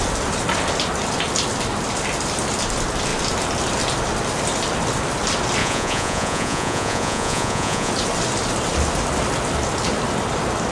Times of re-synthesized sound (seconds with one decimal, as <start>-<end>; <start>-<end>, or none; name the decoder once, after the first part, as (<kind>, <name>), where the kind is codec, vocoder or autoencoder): 5.6-7.9 (vocoder, Vocos)